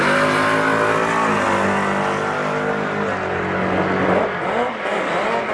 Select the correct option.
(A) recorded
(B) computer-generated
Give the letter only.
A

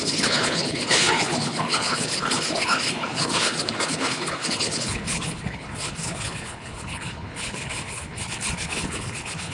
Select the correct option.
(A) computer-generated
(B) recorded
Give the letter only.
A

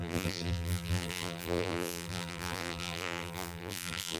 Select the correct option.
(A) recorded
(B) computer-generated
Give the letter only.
B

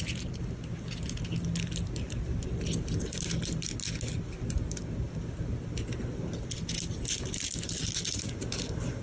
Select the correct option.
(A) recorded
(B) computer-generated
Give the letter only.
A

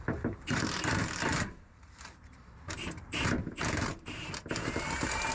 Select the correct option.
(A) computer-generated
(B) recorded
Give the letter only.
A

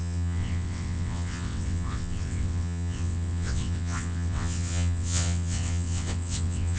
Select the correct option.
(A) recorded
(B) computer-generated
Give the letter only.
B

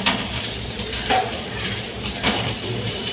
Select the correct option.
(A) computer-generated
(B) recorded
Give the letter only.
A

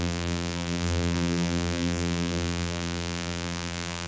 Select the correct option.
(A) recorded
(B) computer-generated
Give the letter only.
B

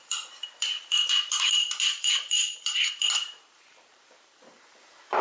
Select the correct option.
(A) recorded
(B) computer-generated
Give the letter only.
B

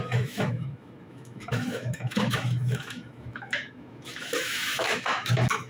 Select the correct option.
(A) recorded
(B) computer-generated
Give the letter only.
B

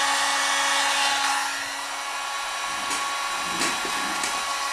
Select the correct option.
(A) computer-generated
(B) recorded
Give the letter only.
B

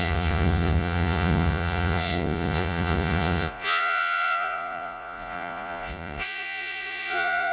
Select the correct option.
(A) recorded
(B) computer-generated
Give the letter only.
B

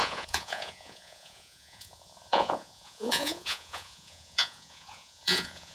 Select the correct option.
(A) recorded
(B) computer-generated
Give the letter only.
B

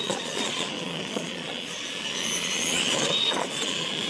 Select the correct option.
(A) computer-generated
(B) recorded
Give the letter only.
A